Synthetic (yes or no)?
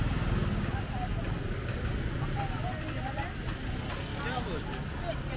no